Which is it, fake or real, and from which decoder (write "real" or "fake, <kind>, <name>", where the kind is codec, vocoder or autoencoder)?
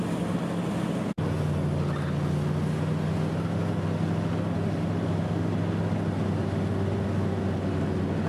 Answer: real